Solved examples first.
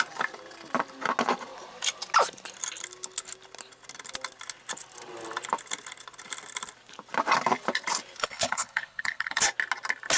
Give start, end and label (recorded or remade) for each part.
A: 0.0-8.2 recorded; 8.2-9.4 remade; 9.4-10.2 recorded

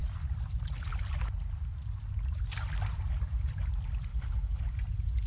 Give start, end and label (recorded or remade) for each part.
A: 0.0-4.1 recorded; 4.1-4.6 remade; 4.6-5.3 recorded

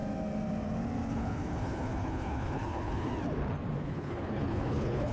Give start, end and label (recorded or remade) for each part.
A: 0.0-1.1 recorded; 1.1-3.1 remade; 3.1-3.8 recorded; 3.8-5.1 remade

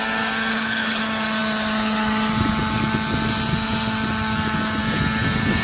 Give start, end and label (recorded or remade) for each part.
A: 0.0-0.5 recorded; 0.5-1.0 remade; 1.0-5.6 recorded

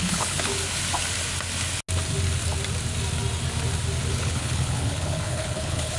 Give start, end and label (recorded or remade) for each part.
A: 0.0-0.5 remade; 0.5-4.1 recorded; 4.1-6.0 remade

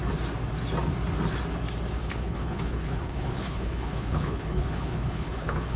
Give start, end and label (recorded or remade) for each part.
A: 0.0-2.0 recorded; 2.0-5.8 remade

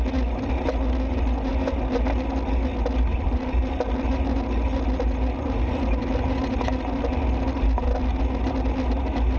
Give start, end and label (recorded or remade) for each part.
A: 0.0-9.4 recorded